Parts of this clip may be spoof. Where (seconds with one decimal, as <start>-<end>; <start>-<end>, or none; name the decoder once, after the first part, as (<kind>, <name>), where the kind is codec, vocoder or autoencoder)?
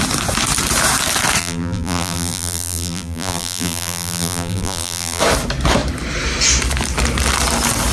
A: 1.4-5.2 (vocoder, BigVGAN v2)